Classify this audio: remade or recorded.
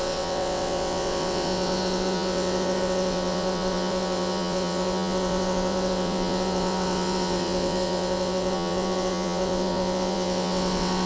remade